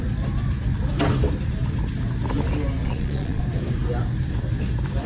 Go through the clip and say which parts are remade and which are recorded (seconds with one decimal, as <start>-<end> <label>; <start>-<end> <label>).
0.0-2.8 recorded; 2.8-3.4 remade; 3.4-5.1 recorded